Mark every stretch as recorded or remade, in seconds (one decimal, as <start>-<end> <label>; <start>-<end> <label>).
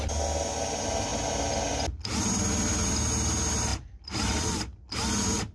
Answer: 0.0-3.7 recorded; 3.7-4.8 remade; 4.8-5.5 recorded